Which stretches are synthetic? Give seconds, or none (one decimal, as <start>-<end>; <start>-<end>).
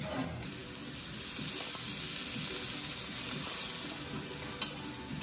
none